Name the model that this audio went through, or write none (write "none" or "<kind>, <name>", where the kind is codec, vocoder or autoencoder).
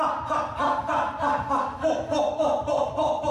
none